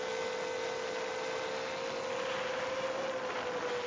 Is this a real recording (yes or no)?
yes